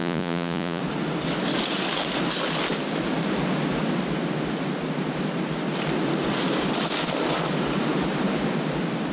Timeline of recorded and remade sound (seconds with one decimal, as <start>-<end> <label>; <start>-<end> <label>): 0.0-0.8 remade; 0.8-9.1 recorded